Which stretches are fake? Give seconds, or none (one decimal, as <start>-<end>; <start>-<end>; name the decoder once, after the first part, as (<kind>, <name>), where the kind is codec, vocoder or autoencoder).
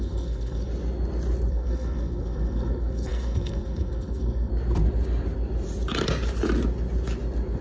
0.0-0.7 (codec, SNAC); 1.5-4.5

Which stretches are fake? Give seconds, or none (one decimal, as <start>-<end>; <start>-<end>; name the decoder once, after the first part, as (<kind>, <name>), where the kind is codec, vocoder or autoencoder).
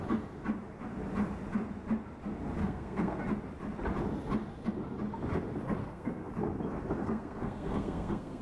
2.6-3.2 (codec, SNAC); 5.8-6.3; 7.0-8.4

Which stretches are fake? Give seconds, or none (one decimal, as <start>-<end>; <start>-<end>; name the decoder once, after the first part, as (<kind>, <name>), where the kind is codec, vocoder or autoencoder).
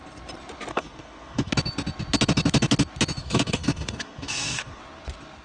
0.7-1.5 (codec, SNAC); 3.2-4.8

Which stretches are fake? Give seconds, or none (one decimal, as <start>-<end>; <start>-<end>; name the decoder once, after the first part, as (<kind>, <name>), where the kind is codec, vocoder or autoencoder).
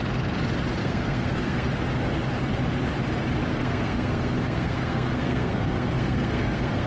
0.8-1.7 (codec, SNAC); 3.5-6.9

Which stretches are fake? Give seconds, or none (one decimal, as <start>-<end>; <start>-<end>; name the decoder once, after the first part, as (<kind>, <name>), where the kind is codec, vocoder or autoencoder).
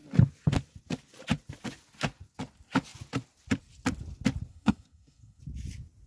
4.5-5.4 (codec, SNAC)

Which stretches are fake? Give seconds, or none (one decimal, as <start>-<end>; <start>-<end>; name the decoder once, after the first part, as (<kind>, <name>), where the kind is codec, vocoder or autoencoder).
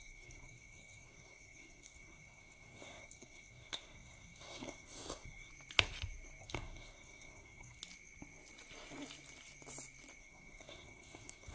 0.0-5.5 (codec, SNAC); 6.4-7.8; 10.2-11.5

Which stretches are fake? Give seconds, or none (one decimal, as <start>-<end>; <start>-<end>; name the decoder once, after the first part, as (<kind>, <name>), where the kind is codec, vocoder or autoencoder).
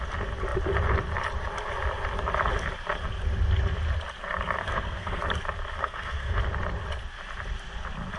4.6-5.2 (codec, SNAC); 5.8-6.4